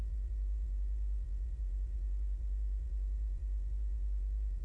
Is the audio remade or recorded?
remade